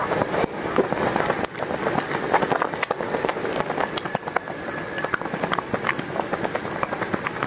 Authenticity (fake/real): fake